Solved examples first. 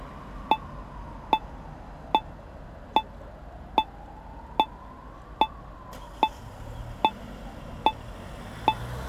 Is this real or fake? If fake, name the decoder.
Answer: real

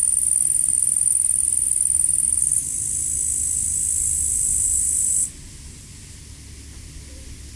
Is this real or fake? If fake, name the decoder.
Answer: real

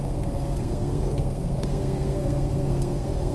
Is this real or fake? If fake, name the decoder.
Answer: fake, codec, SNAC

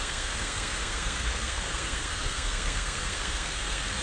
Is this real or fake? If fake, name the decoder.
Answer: fake, codec, SNAC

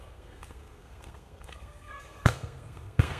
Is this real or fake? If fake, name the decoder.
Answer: fake, codec, SNAC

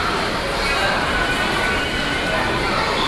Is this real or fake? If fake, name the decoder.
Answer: real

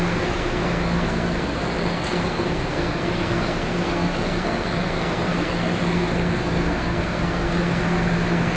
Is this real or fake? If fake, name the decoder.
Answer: fake, codec, SNAC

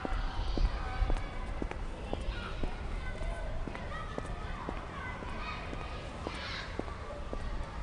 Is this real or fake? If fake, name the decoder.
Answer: real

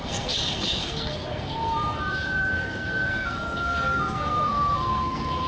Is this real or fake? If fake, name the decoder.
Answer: fake, codec, SNAC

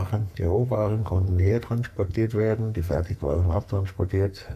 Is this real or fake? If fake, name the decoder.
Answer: fake, codec, SNAC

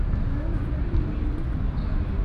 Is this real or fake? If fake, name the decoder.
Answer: real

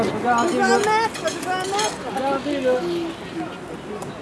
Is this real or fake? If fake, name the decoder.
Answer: real